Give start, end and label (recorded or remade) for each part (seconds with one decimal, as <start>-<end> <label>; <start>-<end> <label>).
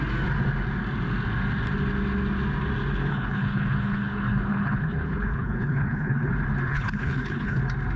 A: 0.0-3.1 recorded; 3.1-6.3 remade; 6.3-6.7 recorded; 6.7-7.6 remade; 7.6-8.0 recorded